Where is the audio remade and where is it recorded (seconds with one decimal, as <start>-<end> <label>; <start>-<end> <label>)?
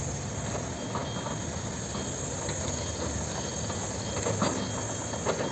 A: 0.0-5.5 recorded